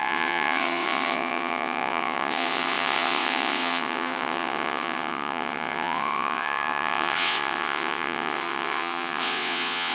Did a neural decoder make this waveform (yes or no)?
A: yes